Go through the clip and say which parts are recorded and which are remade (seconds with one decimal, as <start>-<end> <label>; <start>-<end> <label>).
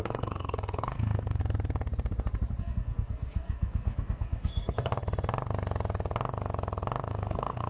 0.0-1.4 remade; 1.4-2.6 recorded; 2.6-4.9 remade; 4.9-7.1 recorded; 7.1-7.7 remade